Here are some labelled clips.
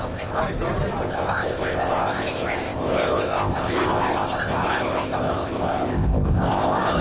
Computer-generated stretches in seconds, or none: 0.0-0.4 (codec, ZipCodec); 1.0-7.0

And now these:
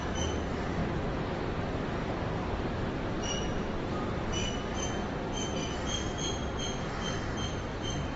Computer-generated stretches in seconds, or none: 0.0-4.4 (vocoder, BigVGAN v2); 6.6-8.2

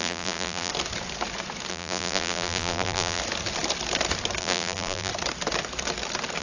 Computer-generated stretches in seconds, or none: 0.0-0.7 (vocoder, BigVGAN v2); 1.7-3.2; 4.4-5.1

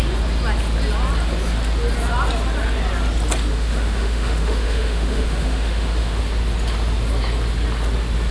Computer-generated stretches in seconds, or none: 3.5-6.2 (autoencoder, DAC-VAE)